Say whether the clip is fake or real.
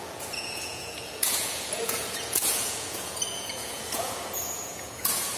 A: fake